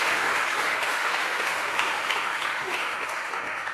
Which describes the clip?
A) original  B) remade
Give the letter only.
B